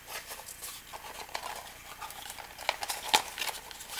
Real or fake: real